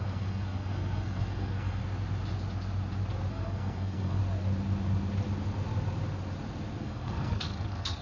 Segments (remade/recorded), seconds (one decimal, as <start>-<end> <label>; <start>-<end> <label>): 0.0-1.8 remade; 1.8-3.3 recorded; 3.3-4.2 remade; 4.2-6.8 recorded; 6.8-8.0 remade